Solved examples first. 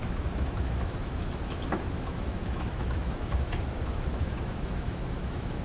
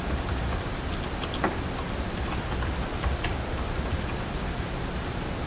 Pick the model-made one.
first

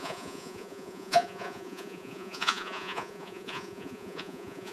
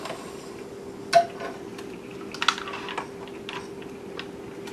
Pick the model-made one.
first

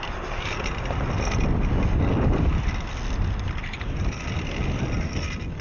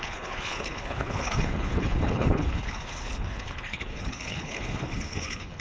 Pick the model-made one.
second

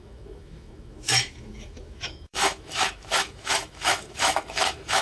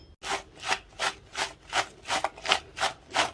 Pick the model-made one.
first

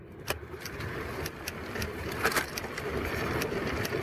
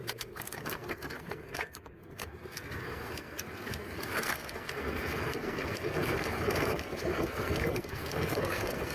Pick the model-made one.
second